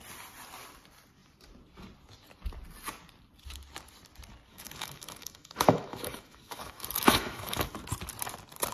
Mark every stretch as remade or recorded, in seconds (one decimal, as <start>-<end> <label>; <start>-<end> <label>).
0.0-4.5 recorded; 4.5-7.7 remade; 7.7-8.7 recorded